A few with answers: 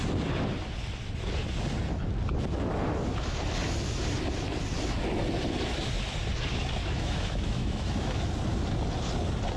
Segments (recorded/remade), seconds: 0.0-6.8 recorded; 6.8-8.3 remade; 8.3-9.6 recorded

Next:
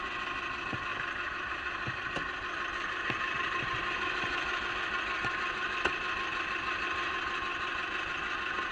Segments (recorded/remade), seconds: 0.0-0.9 recorded; 0.9-4.7 remade; 4.7-8.7 recorded

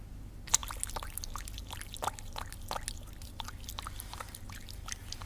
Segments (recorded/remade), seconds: 0.0-5.3 recorded

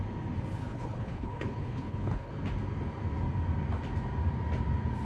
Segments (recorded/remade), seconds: 0.0-0.6 recorded; 0.6-2.3 remade; 2.3-5.0 recorded

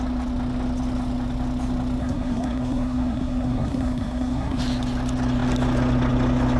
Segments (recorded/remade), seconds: 0.0-2.0 recorded; 2.0-4.6 remade; 4.6-6.6 recorded

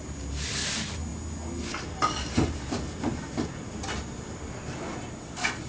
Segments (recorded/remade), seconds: 0.0-5.7 recorded

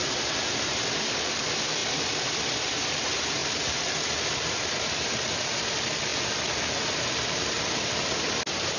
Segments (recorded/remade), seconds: 0.0-8.8 recorded

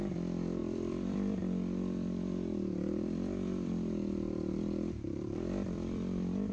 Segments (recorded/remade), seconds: 0.0-6.5 remade